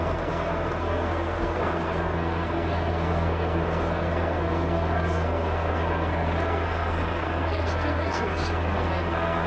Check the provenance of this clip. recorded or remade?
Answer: remade